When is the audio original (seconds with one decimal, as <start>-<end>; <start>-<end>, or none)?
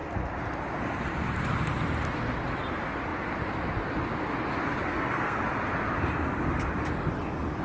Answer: 0.0-4.9; 5.4-7.6